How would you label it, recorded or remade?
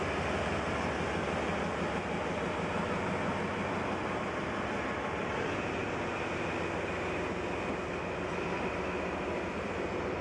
recorded